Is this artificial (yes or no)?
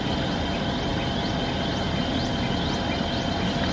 no